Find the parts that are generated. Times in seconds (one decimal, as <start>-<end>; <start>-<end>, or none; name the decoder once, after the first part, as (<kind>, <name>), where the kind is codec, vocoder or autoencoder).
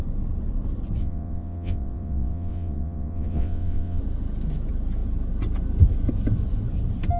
1.0-4.0 (vocoder, WaveNeXt)